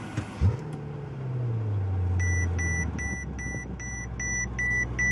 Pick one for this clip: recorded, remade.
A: recorded